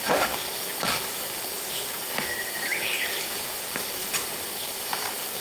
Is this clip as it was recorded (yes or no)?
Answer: no